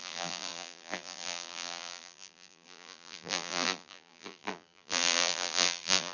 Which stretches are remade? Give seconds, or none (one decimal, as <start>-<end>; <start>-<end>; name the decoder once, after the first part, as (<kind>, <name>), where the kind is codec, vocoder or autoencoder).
0.0-6.1 (vocoder, BigVGAN v2)